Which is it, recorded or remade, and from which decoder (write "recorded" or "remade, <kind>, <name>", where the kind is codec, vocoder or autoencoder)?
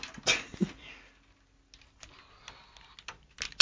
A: recorded